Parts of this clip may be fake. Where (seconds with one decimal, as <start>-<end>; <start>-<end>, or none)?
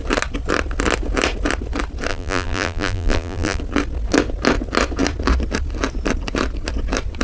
2.1-3.6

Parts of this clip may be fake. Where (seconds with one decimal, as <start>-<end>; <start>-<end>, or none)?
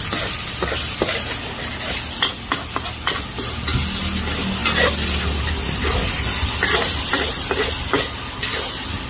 none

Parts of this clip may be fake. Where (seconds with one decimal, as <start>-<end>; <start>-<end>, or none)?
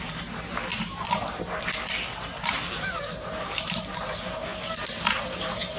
0.0-4.5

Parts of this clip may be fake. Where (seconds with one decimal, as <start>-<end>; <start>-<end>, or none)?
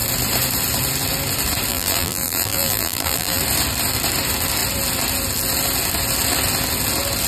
1.7-3.4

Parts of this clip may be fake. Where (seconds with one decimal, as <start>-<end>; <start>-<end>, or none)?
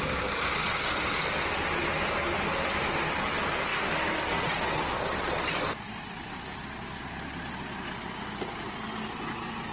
none